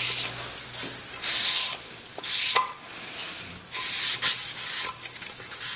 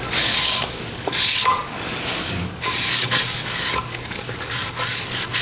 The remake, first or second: second